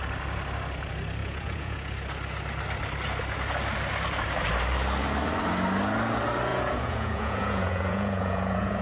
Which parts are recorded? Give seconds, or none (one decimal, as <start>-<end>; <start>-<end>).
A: 0.0-1.2; 1.9-6.5